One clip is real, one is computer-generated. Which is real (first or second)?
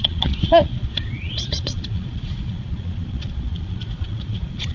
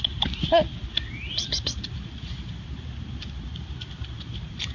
second